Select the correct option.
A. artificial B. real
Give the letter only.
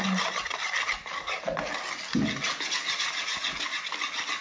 B